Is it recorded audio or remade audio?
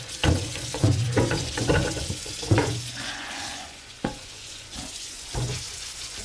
remade